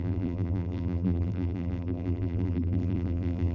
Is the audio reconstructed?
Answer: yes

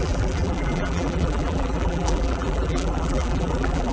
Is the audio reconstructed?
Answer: yes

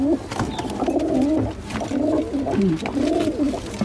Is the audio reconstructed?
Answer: no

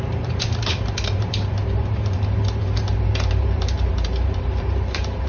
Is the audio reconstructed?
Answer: yes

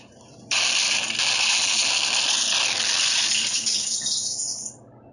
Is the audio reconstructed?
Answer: no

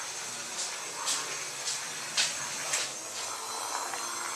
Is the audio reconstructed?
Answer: no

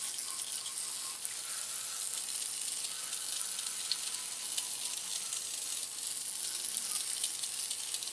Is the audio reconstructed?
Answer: no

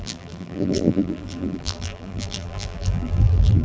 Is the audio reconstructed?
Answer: yes